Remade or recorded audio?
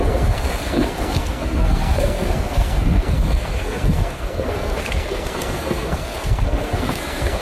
remade